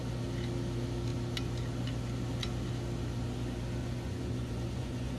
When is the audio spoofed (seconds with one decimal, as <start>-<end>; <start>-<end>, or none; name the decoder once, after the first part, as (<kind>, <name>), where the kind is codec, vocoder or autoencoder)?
3.8-5.2 (vocoder, Vocos)